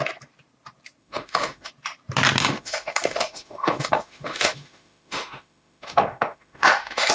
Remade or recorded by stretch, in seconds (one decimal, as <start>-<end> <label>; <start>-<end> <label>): 0.0-1.0 recorded; 1.0-1.7 remade; 1.7-2.4 recorded; 2.4-7.1 remade